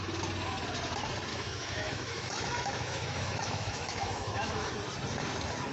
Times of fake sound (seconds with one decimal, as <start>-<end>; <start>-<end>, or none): 1.3-4.7